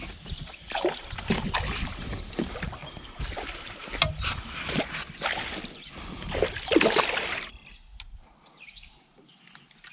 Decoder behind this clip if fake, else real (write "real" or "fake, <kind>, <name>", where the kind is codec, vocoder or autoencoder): real